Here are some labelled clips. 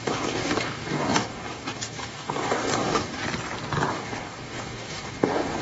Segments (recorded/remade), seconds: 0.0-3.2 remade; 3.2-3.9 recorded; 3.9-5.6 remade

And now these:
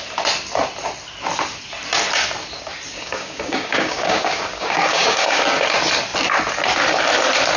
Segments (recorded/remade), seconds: 0.0-2.9 recorded; 2.9-5.4 remade; 5.4-7.6 recorded

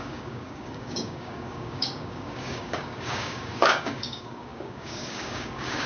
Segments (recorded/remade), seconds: 0.0-5.9 remade

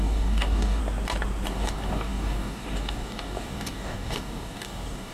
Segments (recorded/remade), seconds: 0.0-0.8 remade; 0.8-1.5 recorded; 1.5-5.1 remade